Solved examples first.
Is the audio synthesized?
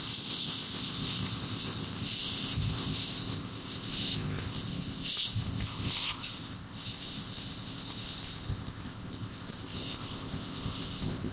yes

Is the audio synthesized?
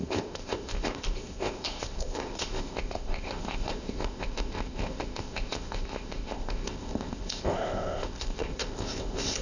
yes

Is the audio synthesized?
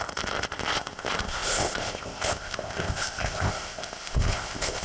yes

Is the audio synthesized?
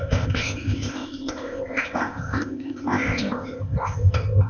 yes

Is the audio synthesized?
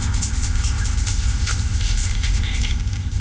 yes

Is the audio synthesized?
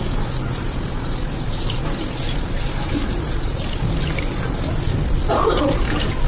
no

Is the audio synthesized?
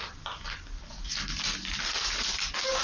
no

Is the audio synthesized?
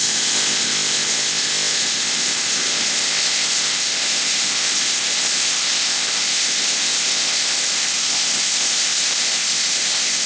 yes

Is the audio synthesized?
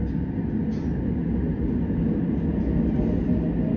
no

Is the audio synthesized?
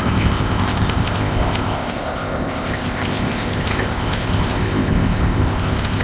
yes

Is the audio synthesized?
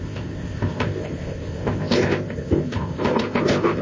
yes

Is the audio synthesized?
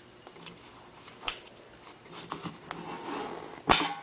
no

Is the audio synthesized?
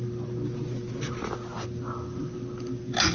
no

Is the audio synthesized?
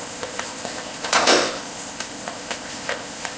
yes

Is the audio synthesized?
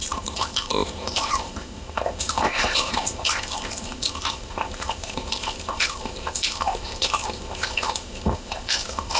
yes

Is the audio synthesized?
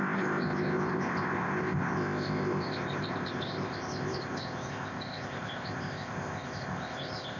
yes